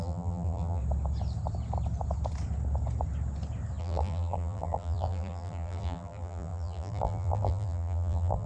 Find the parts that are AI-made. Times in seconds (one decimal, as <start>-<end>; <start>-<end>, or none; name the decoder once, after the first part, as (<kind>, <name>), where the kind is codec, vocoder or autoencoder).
0.0-0.8 (vocoder, BigVGAN v2); 3.8-8.5